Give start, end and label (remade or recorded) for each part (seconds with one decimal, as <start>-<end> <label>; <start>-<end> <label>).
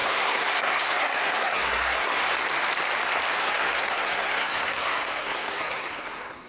0.0-2.2 remade; 2.2-3.4 recorded; 3.4-6.5 remade